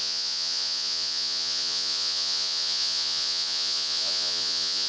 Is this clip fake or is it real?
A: fake